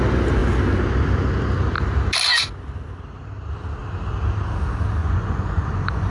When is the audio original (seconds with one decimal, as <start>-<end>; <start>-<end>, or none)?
0.0-5.0